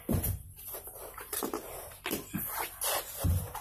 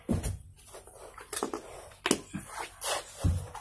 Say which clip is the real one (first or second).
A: second